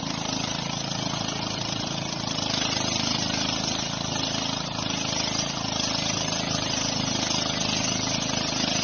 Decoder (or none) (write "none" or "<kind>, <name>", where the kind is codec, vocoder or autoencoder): none